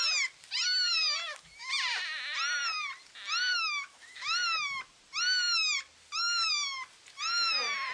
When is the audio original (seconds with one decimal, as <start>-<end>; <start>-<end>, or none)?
0.0-1.2; 1.7-3.5; 4.8-7.9